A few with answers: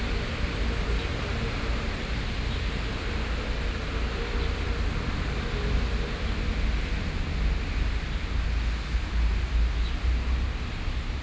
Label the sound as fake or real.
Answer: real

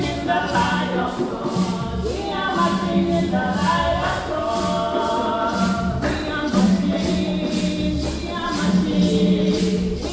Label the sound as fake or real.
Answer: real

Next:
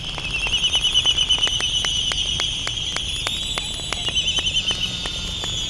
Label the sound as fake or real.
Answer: real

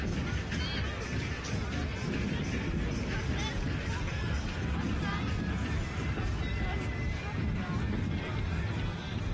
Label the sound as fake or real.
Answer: real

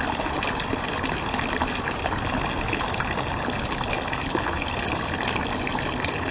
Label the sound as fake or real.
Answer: real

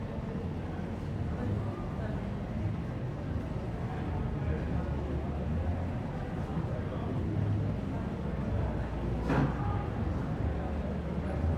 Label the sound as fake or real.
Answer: real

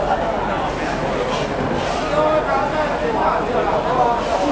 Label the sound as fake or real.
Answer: real